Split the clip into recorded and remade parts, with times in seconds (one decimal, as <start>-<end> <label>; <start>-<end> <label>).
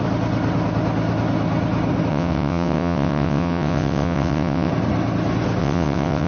0.0-2.1 recorded; 2.1-4.7 remade; 4.7-5.6 recorded; 5.6-6.3 remade